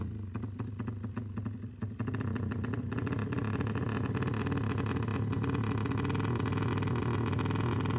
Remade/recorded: recorded